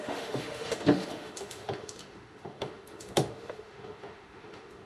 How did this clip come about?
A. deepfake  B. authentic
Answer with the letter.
A